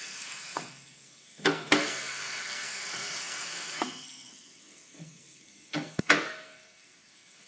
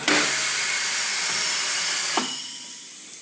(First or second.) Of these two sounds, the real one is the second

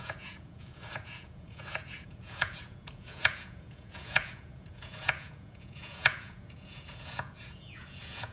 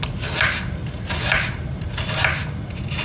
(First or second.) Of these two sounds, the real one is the second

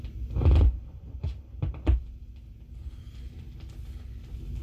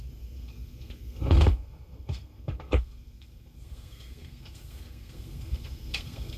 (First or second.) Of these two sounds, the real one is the first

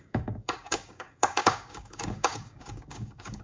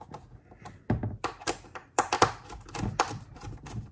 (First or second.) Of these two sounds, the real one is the second